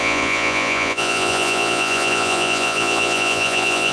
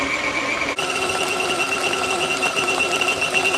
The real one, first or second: second